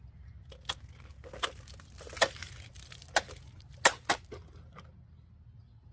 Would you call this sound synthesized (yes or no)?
no